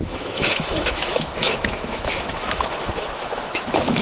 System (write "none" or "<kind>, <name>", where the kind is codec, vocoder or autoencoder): autoencoder, DAC-VAE